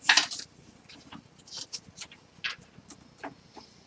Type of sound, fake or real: real